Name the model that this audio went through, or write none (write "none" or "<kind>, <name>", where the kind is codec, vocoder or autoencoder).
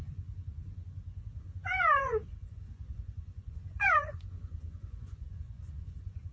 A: vocoder, Vocos